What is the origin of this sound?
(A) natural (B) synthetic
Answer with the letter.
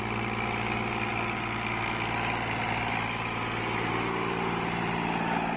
A